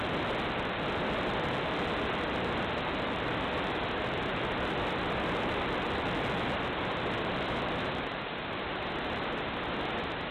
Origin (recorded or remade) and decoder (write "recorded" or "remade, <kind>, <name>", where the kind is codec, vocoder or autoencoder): remade, vocoder, BigVGAN v2